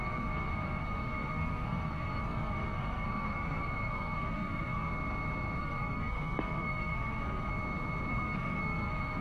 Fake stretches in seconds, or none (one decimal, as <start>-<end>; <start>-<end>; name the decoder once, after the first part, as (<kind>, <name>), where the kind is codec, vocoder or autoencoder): 0.0-4.9 (codec, SNAC); 5.6-7.5; 8.1-9.2